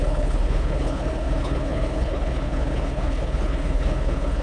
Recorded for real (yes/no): no